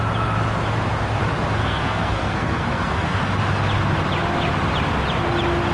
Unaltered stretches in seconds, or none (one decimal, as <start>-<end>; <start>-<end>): 0.0-1.6; 3.2-5.7